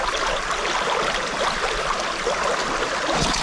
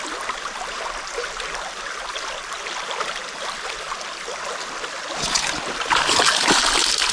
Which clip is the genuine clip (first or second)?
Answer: second